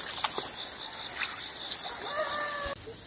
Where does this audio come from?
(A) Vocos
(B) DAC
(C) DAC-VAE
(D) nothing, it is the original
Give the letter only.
D